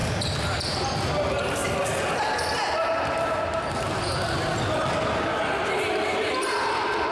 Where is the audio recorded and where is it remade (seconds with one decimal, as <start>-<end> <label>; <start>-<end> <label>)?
0.0-0.7 recorded; 0.7-1.6 remade; 1.6-5.9 recorded; 5.9-7.1 remade